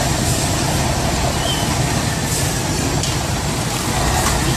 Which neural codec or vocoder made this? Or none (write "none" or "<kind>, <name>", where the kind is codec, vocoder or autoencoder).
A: none